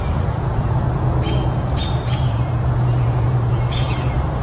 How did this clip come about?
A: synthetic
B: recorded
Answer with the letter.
A